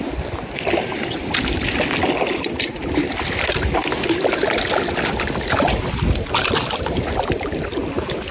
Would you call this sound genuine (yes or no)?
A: yes